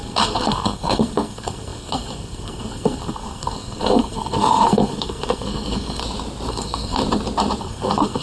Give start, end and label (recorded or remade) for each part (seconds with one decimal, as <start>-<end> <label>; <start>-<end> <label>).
0.0-6.0 remade; 6.0-6.5 recorded; 6.5-7.0 remade; 7.0-7.6 recorded; 7.6-8.2 remade